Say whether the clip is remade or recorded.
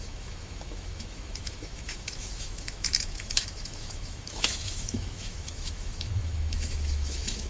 remade